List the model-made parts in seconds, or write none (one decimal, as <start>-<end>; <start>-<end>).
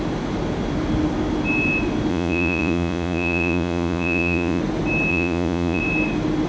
2.1-4.6; 5.1-5.8